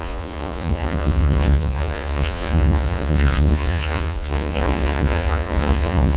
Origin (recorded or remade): remade